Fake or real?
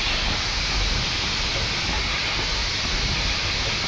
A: fake